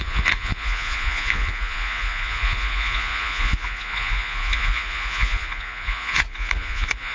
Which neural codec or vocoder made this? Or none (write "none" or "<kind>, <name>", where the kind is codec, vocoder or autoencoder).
vocoder, Vocos